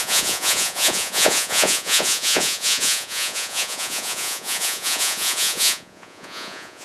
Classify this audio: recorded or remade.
remade